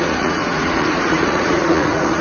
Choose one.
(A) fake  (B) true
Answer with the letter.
A